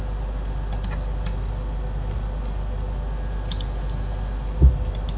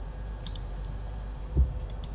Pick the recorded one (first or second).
first